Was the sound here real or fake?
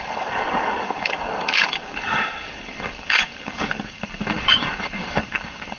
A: fake